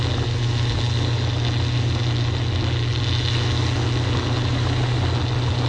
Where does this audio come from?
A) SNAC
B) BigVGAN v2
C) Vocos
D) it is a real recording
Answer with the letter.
D